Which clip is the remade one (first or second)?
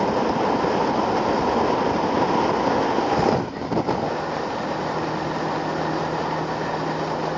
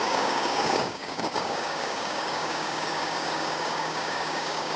second